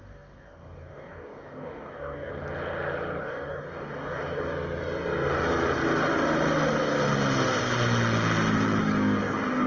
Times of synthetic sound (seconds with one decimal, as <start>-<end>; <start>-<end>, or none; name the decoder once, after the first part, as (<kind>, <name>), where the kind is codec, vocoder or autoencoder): 0.0-2.3 (codec, DAC); 3.2-4.4; 8.8-9.7